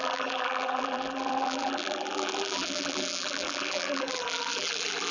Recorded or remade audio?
remade